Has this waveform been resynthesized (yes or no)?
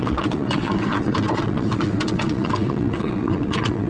yes